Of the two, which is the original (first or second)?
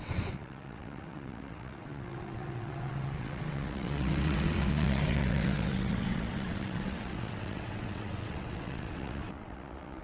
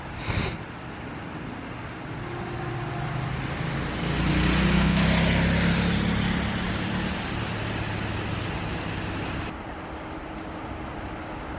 second